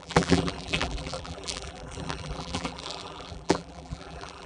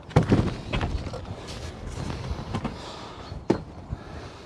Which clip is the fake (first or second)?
first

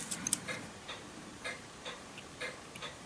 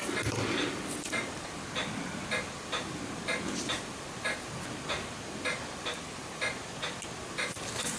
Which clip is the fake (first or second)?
first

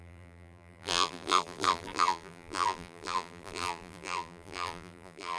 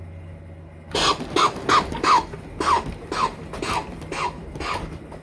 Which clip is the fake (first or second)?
first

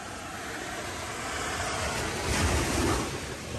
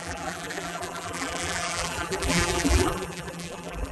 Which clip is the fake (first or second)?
second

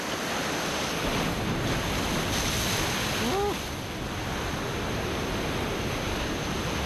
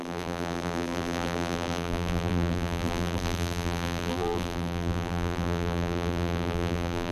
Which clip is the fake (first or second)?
second